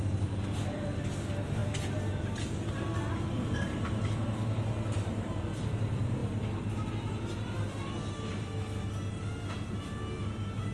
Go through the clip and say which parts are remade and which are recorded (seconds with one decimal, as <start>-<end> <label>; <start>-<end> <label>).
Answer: 0.0-10.7 recorded